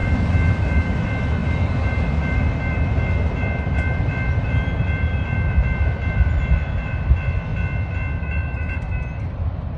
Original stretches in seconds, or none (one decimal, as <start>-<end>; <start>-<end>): 7.5-8.2